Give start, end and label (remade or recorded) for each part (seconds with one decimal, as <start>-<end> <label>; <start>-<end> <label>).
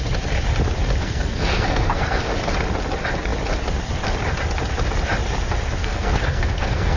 0.0-1.0 recorded; 1.0-2.3 remade; 2.3-5.8 recorded; 5.8-7.0 remade